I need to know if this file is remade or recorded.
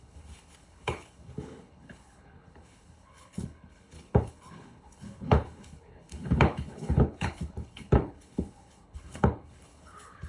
remade